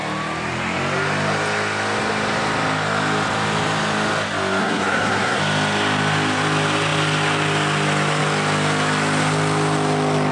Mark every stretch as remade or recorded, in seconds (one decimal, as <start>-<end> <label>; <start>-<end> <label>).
0.0-4.6 recorded; 4.6-5.4 remade; 5.4-10.3 recorded